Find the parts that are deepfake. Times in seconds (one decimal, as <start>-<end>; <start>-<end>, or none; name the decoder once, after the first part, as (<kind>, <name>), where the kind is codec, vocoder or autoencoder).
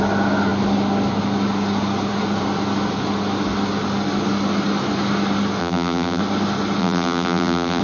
5.6-6.2 (vocoder, BigVGAN v2); 6.8-7.8